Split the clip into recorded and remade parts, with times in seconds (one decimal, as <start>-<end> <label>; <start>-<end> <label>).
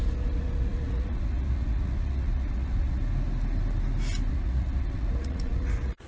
0.0-3.0 remade; 3.0-4.3 recorded; 4.3-6.1 remade